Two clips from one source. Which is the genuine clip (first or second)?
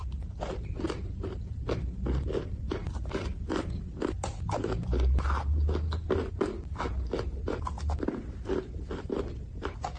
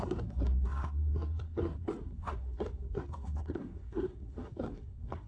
first